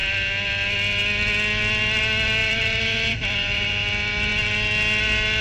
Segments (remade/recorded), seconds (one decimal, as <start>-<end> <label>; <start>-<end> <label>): 0.0-2.4 recorded; 2.4-3.7 remade; 3.7-5.4 recorded